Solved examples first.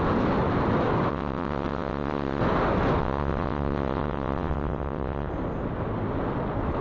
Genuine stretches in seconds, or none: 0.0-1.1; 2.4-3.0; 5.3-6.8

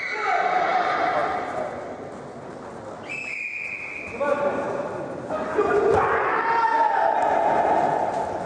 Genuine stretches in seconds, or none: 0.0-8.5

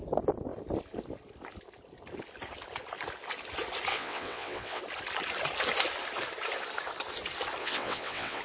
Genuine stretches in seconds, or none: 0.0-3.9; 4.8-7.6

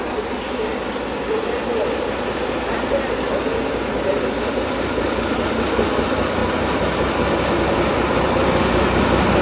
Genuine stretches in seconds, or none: 0.0-9.4

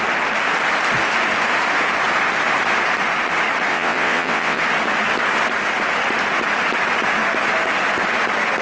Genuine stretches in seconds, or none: 0.0-3.7; 4.6-8.6